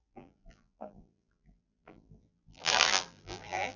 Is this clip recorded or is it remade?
remade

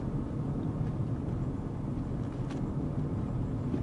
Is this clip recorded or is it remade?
recorded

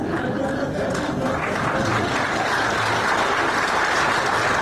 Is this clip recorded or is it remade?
remade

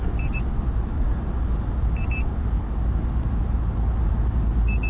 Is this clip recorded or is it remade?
recorded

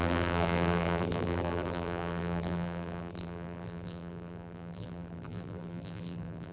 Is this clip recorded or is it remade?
remade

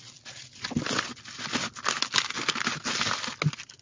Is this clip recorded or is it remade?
recorded